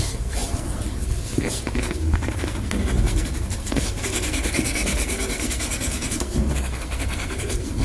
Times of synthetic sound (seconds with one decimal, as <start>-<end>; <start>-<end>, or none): 0.0-7.8